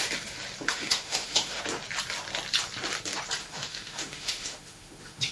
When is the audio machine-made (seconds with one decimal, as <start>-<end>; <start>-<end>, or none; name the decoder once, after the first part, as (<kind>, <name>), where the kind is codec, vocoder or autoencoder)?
0.7-1.6 (autoencoder, DAC-VAE); 3.4-5.3